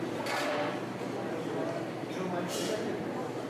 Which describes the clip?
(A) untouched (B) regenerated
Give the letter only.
B